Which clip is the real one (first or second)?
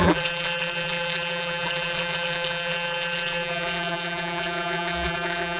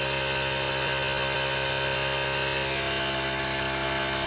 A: second